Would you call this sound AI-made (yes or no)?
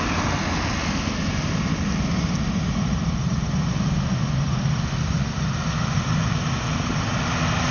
no